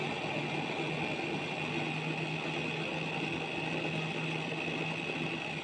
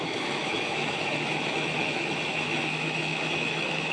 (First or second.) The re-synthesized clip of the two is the second